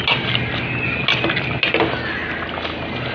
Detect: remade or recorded recorded